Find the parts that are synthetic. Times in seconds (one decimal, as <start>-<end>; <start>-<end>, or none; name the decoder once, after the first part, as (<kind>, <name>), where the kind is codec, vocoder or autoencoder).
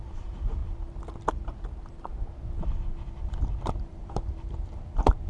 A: 0.0-0.6 (vocoder, BigVGAN v2); 3.8-5.3